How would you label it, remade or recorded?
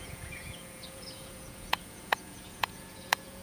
remade